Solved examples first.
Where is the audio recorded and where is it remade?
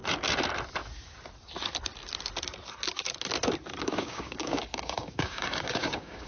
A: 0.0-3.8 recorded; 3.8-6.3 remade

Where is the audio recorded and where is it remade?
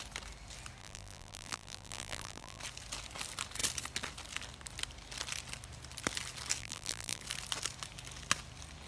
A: 0.0-0.8 recorded; 0.8-2.6 remade; 2.6-6.6 recorded; 6.6-7.2 remade; 7.2-8.9 recorded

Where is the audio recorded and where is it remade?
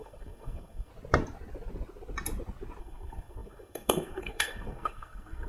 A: 0.0-0.9 remade; 0.9-2.8 recorded; 2.8-5.5 remade